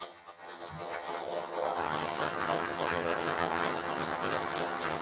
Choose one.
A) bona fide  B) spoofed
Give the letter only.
B